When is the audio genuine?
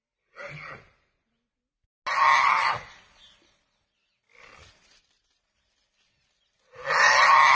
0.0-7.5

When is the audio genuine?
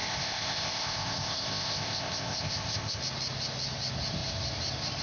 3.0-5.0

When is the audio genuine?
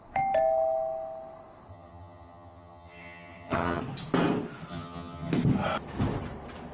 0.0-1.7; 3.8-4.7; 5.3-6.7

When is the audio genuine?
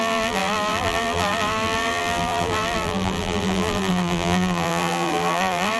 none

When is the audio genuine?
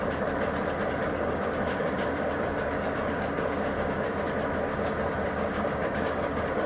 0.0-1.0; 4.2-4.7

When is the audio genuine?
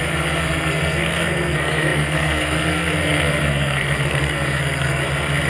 5.0-5.5